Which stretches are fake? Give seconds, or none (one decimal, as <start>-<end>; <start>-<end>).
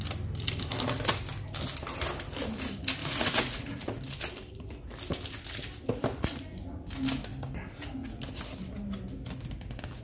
3.0-4.0